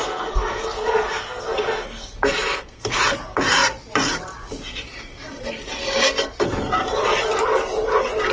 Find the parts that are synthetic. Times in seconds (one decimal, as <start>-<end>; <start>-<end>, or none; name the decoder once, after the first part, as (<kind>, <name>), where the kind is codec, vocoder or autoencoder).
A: 0.0-3.0 (codec, SNAC)